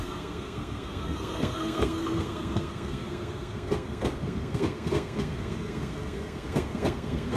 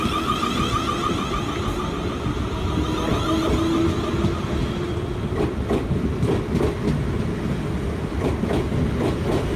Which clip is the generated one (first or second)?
first